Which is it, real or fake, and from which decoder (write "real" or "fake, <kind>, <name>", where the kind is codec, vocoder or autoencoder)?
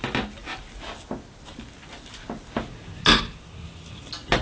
real